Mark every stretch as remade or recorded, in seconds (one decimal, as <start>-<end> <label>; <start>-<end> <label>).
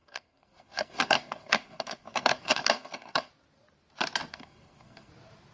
0.0-3.3 remade; 3.3-4.3 recorded; 4.3-5.1 remade; 5.1-5.5 recorded